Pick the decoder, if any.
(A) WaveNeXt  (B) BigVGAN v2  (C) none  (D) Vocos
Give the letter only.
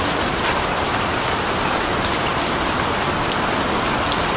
C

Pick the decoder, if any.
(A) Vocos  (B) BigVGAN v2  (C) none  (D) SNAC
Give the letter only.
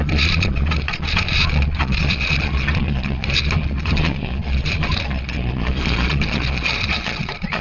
A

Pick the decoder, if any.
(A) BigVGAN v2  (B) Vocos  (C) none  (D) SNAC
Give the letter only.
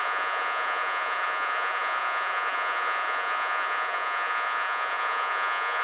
B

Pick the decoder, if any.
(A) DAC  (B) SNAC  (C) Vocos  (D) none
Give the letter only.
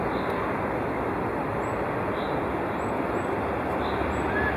D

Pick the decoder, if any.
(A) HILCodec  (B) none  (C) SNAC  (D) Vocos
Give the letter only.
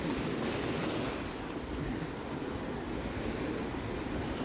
B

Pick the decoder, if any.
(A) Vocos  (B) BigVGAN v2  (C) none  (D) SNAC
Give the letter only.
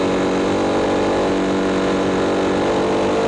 C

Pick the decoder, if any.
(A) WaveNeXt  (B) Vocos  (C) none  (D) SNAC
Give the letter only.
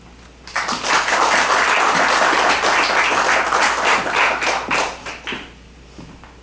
C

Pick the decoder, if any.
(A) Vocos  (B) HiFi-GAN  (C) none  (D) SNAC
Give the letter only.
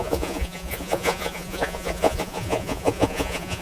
A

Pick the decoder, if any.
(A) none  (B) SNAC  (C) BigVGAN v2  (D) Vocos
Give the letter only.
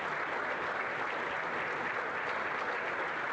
A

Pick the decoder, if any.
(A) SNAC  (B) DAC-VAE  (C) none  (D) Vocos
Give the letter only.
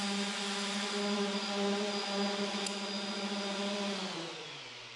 D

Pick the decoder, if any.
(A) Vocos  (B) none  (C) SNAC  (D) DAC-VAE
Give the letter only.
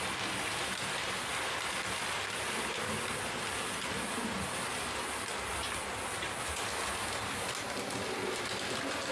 B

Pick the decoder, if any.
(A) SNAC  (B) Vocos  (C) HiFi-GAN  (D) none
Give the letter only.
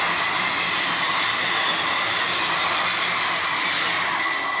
D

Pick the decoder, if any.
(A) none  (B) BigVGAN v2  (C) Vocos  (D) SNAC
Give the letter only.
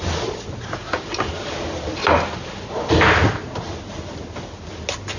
A